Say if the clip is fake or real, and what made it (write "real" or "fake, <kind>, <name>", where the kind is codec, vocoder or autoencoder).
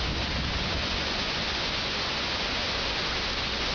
fake, vocoder, Vocos